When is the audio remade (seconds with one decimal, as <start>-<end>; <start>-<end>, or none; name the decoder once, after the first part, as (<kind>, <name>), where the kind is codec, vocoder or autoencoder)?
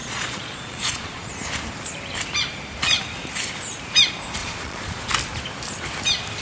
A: 0.0-1.3 (vocoder, Vocos); 4.4-5.0